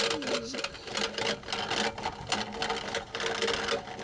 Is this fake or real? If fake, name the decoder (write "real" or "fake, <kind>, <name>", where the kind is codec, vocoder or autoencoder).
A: real